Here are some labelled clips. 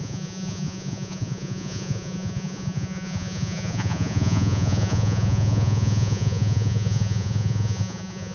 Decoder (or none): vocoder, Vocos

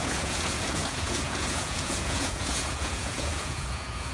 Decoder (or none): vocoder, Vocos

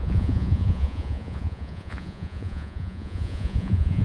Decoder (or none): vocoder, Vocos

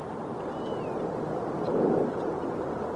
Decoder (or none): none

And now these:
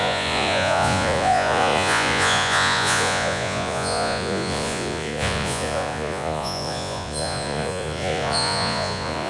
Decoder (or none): vocoder, Vocos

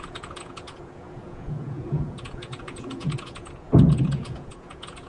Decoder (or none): vocoder, Vocos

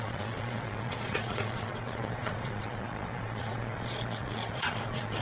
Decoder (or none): vocoder, Vocos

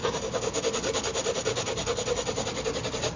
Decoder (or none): none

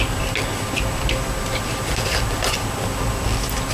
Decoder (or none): none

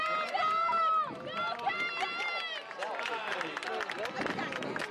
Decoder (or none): none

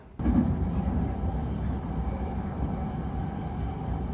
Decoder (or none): none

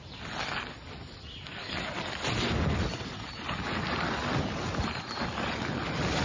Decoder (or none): none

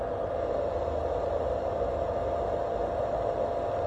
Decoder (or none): none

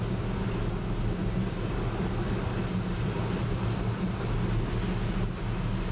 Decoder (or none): none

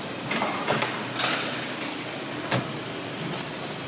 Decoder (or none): none